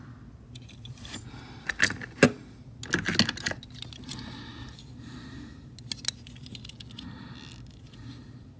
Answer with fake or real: real